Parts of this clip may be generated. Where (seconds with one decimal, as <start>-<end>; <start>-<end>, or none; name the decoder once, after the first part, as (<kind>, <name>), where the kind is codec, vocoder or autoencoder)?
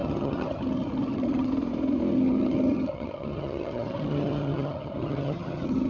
0.0-1.5 (vocoder, HiFi-GAN); 2.1-5.9